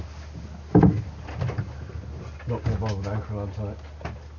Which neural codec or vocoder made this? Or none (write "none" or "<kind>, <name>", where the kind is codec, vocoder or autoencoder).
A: none